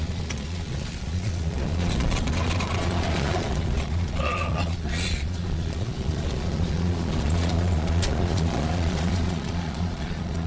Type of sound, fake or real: fake